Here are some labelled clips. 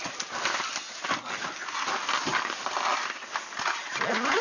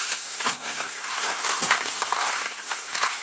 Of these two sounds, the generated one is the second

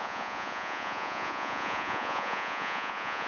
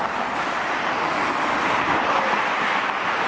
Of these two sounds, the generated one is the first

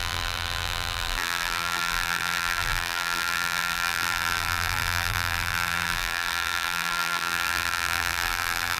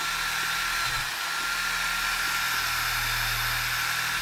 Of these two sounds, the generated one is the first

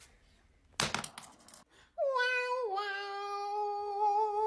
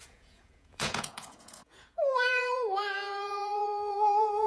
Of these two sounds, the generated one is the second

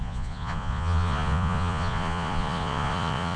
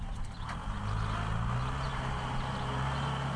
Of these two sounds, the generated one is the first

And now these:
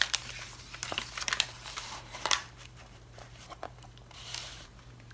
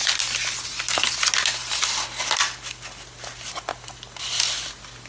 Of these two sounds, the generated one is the first